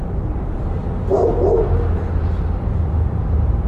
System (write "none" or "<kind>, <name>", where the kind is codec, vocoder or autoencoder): none